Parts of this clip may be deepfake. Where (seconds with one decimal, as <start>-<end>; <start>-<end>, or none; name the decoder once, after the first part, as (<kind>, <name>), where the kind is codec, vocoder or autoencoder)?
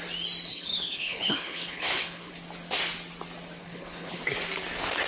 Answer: 0.5-2.3 (codec, HILCodec); 3.6-4.2